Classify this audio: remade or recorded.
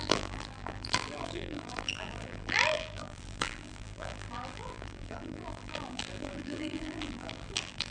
remade